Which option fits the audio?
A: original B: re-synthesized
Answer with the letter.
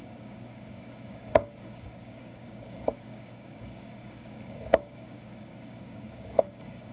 B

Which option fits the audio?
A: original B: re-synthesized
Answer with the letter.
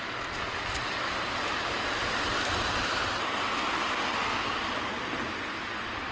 A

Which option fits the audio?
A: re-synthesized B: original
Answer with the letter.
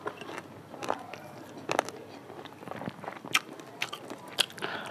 B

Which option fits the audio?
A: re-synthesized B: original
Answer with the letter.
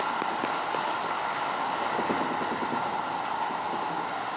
B